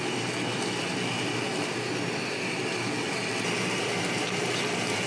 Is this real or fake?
real